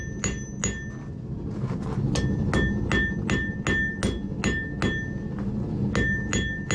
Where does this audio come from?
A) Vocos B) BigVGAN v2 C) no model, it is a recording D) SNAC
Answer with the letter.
C